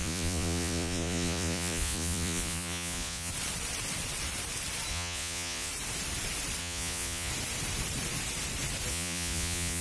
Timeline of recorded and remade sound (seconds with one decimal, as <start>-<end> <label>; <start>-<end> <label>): 0.0-3.3 remade; 3.3-4.9 recorded; 4.9-5.7 remade; 5.7-6.6 recorded; 6.6-7.3 remade; 7.3-8.9 recorded; 8.9-9.8 remade